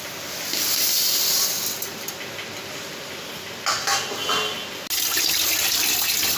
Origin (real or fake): real